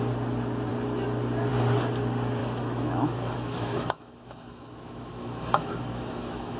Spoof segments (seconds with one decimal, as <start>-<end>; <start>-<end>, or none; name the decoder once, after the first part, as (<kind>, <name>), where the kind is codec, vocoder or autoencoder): 2.4-6.6 (autoencoder, DAC-VAE)